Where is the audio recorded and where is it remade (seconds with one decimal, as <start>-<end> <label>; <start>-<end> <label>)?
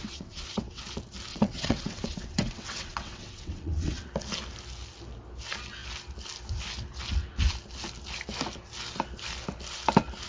0.0-0.8 remade; 0.8-1.3 recorded; 1.3-4.0 remade; 4.0-10.3 recorded